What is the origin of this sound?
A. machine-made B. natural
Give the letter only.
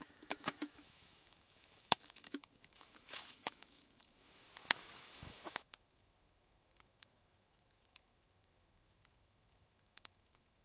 A